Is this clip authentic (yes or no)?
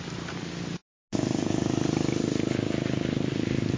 yes